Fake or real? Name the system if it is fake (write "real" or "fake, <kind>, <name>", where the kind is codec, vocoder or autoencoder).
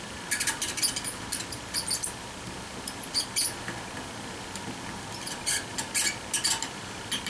real